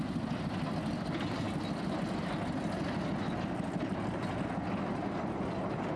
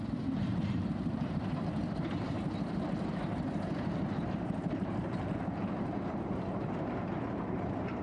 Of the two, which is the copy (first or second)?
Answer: second